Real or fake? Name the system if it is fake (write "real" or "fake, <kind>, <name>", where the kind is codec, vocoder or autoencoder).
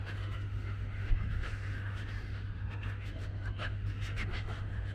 fake, autoencoder, DAC-VAE